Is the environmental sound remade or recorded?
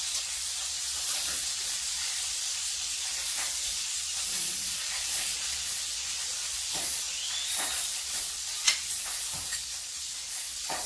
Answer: remade